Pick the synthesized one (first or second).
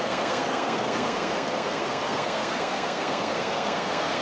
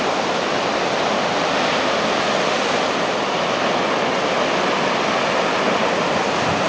first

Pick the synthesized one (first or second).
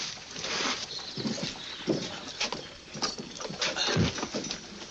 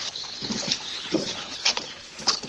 second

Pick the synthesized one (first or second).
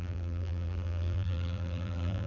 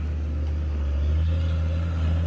first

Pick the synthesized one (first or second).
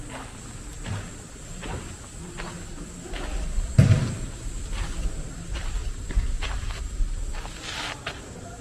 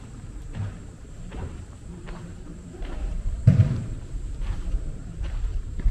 second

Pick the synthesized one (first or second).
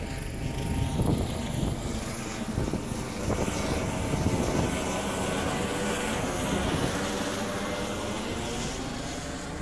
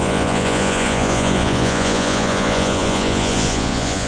second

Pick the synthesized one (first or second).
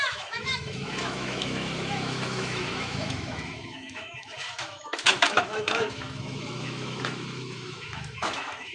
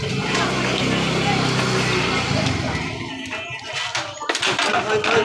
first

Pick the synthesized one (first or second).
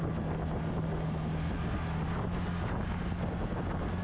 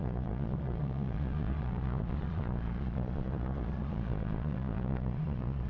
second